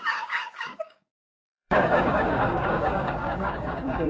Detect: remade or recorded remade